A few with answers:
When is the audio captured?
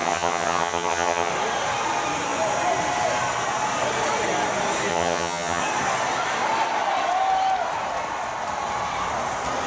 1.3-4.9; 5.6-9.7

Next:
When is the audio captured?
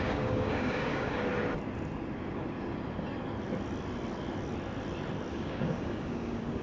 1.3-5.3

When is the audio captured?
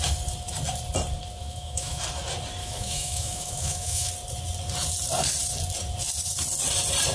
0.0-1.4; 2.0-2.6; 4.1-7.1